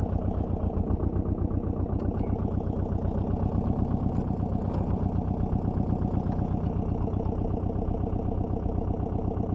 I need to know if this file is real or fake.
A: real